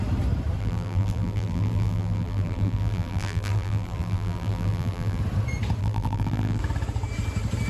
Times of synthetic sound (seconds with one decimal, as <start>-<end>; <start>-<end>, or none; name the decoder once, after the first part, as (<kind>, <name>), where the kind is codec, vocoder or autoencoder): 0.6-5.2 (vocoder, BigVGAN v2); 5.8-6.6